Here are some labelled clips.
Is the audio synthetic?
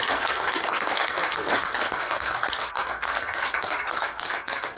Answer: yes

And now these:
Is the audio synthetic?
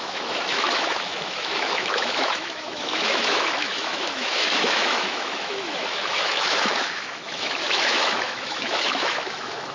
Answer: yes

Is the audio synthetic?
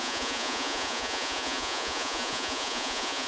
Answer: yes